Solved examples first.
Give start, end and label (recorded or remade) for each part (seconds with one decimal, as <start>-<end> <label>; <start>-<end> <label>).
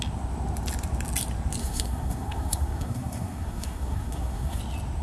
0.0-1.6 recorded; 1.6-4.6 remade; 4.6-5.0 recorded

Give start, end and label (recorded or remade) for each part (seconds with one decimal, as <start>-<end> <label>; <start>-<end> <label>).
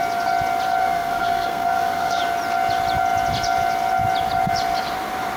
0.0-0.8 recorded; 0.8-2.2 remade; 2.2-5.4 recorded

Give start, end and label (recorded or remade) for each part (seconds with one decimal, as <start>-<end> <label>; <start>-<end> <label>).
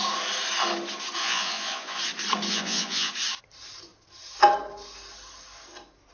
0.0-1.2 recorded; 1.2-2.0 remade; 2.0-2.5 recorded; 2.5-3.1 remade; 3.1-6.1 recorded